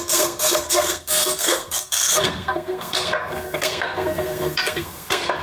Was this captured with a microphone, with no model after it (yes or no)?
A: no